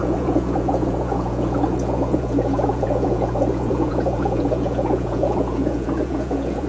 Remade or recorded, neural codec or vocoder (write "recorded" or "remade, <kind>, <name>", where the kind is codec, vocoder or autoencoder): remade, vocoder, Vocos